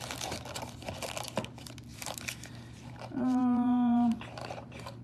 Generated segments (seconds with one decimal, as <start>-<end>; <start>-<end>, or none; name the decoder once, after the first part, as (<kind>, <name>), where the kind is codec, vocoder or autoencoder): 1.9-5.0 (vocoder, BigVGAN v2)